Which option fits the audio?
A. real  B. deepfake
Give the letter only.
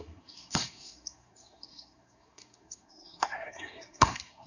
B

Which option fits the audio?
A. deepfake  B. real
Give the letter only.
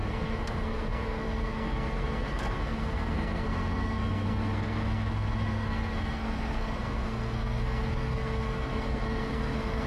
A